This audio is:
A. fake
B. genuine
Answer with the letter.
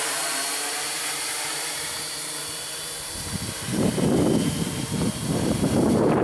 A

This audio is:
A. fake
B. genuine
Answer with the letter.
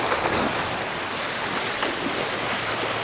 B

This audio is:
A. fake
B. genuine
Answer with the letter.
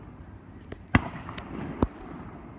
B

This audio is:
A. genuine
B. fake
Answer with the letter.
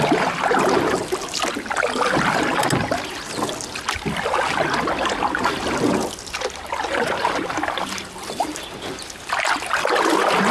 A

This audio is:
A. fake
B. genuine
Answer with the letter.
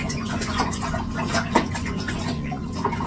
A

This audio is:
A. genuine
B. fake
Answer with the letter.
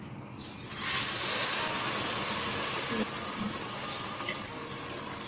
A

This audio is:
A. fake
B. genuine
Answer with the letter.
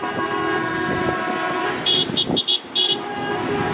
B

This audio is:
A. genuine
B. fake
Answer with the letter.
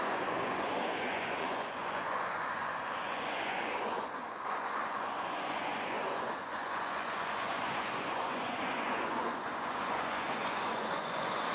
B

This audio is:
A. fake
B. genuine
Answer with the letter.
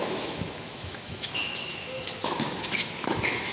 A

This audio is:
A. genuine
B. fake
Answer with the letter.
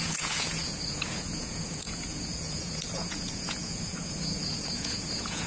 B